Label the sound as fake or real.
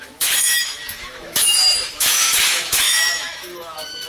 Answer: fake